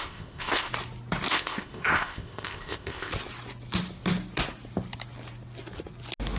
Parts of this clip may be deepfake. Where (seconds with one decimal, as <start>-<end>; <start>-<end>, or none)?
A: 0.0-0.7; 1.3-3.1